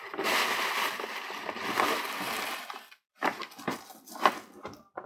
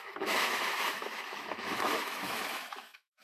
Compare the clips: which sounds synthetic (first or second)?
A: second